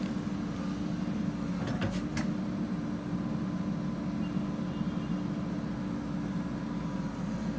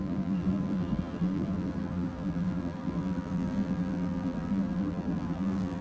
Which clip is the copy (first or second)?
second